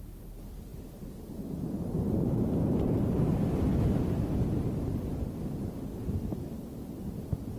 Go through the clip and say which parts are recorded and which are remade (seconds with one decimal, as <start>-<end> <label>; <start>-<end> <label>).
0.0-7.6 recorded